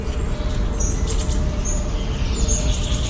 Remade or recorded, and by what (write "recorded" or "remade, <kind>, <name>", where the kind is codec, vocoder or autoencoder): recorded